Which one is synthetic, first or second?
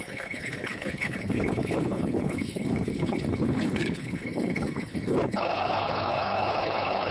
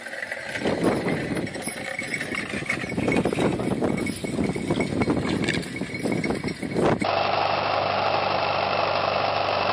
first